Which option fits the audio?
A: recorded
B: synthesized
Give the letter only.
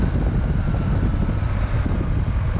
A